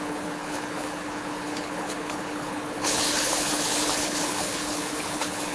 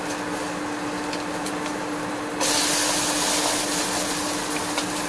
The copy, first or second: first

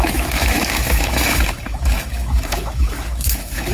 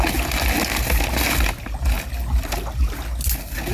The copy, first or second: first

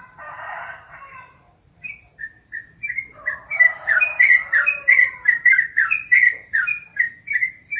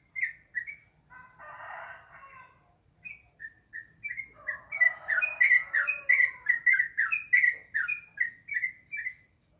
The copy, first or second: first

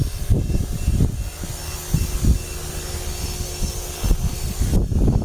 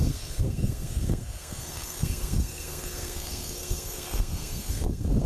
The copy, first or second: second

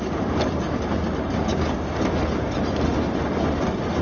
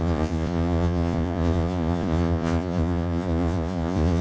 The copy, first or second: second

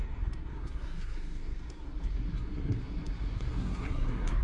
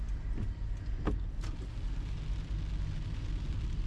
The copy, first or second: first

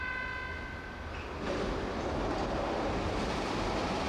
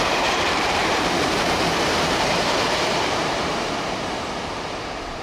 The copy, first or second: second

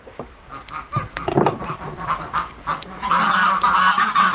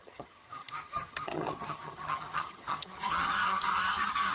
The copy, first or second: second